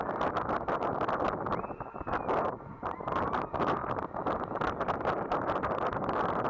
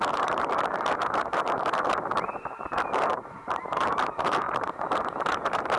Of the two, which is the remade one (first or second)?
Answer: second